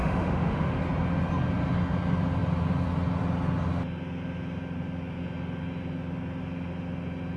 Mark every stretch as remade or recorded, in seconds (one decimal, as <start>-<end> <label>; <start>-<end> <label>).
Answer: 0.0-0.8 remade; 0.8-7.4 recorded